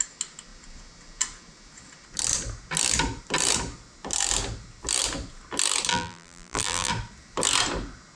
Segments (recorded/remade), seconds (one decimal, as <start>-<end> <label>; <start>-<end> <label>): 0.0-5.9 recorded; 5.9-6.9 remade; 6.9-8.2 recorded